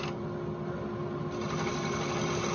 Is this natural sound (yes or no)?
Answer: yes